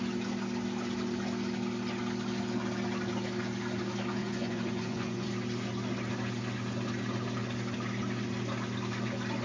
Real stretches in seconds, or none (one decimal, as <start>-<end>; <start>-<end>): 0.0-4.2; 5.3-9.4